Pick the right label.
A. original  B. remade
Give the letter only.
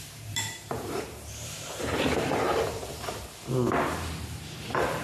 B